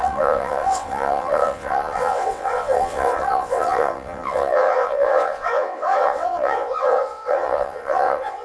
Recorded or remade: remade